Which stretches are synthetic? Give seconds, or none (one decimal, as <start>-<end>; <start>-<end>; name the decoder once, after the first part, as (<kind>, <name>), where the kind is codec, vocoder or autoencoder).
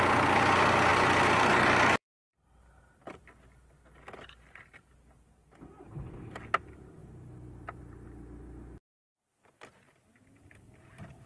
0.9-6.1 (vocoder, BigVGAN v2); 7.0-7.8